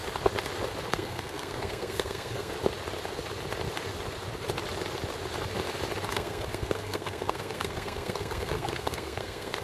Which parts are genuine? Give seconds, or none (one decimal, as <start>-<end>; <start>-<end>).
0.0-0.9; 2.5-6.1